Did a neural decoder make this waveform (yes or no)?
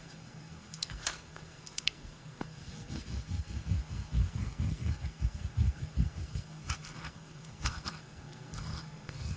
yes